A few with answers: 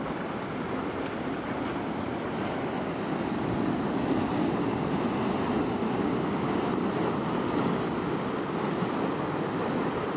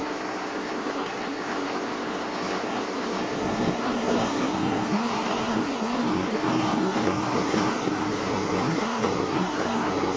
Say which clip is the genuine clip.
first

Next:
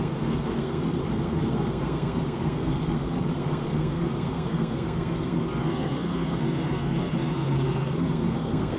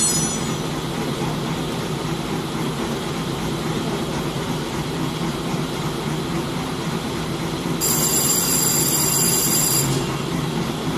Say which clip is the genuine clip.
second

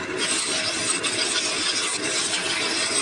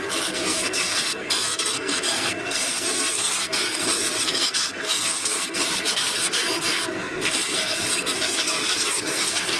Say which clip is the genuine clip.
first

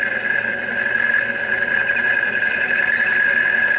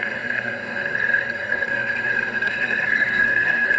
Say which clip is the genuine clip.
first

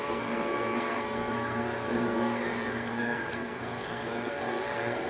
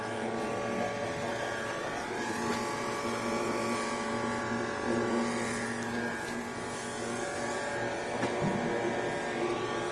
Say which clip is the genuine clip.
second